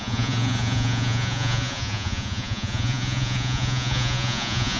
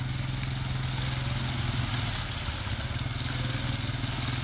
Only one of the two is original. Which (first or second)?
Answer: second